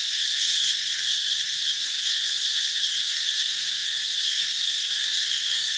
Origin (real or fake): fake